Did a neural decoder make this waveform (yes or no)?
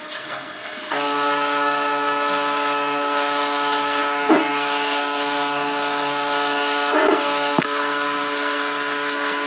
yes